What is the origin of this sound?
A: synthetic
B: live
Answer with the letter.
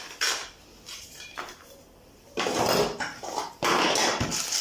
B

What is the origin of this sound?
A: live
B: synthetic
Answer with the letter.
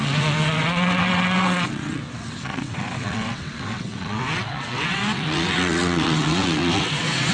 B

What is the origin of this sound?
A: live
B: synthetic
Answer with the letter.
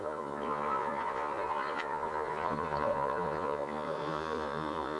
B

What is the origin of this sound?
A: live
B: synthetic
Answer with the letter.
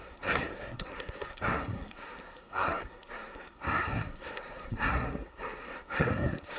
B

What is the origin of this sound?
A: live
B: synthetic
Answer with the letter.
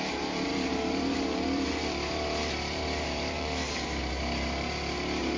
B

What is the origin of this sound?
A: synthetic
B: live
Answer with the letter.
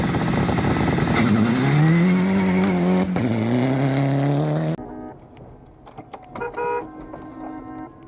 B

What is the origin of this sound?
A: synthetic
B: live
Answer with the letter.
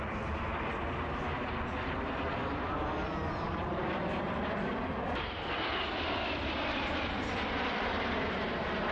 A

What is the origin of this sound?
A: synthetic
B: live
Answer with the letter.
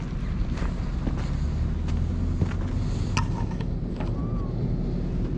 B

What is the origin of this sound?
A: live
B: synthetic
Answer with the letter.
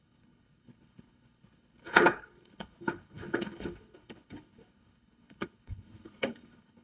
B